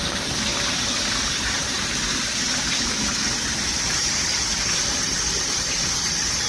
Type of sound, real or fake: fake